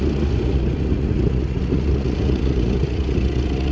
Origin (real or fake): fake